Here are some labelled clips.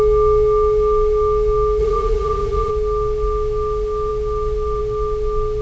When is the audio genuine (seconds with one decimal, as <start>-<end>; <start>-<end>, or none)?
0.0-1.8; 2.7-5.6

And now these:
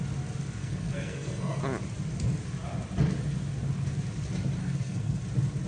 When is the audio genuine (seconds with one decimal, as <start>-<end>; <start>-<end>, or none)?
0.0-0.6; 1.6-4.6; 5.2-5.7

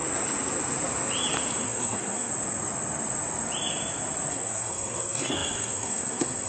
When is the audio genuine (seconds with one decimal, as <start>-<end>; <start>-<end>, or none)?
0.0-1.6; 2.3-4.3

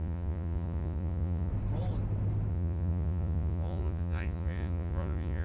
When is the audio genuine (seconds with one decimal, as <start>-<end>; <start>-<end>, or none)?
1.5-2.5

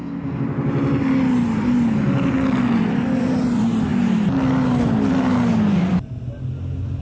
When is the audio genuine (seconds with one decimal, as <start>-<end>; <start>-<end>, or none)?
0.0-7.0